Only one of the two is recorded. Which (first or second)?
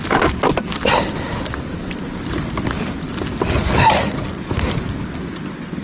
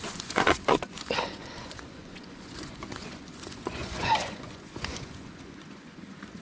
first